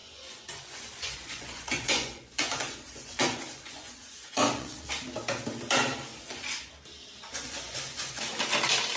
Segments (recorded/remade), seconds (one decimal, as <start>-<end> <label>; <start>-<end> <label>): 0.0-4.9 remade; 4.9-6.1 recorded; 6.1-6.7 remade; 6.7-7.3 recorded; 7.3-8.2 remade; 8.2-9.0 recorded